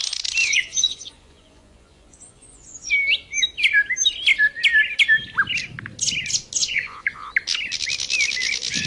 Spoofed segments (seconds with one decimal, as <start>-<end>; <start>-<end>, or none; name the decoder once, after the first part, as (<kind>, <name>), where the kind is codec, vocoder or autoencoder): 0.4-2.9 (vocoder, Vocos); 6.6-7.3